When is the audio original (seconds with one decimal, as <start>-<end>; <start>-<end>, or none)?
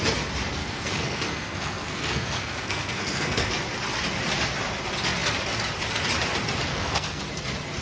0.0-0.6; 3.5-6.7; 7.2-7.8